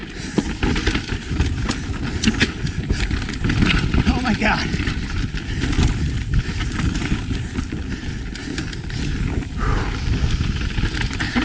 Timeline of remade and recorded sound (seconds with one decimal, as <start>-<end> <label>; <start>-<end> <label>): 0.0-11.4 recorded